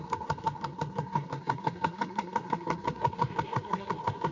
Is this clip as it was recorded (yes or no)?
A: no